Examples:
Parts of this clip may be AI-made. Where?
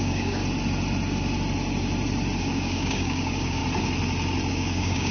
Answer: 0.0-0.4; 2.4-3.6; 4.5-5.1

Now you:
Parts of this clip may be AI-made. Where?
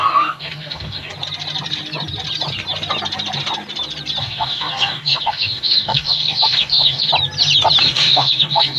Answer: 0.0-1.1; 4.2-7.1; 7.8-8.8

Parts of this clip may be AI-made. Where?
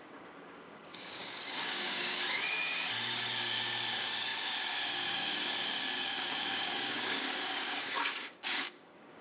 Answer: 0.0-9.2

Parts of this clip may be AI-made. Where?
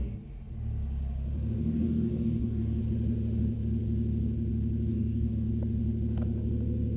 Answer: 1.6-2.8; 4.9-5.5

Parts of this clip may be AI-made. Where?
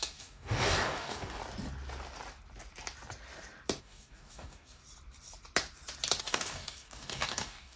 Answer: 0.0-1.4; 3.8-4.8; 6.2-7.8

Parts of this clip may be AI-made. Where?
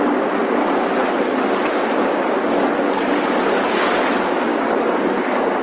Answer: 4.5-5.6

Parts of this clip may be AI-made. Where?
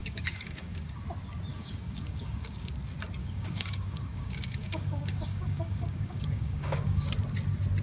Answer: 0.0-1.0; 1.5-2.7; 3.2-7.1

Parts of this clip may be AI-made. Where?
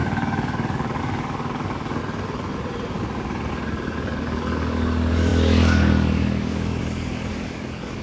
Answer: 0.0-2.0; 3.5-8.0